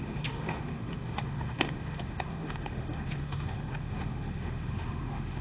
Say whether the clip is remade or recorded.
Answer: remade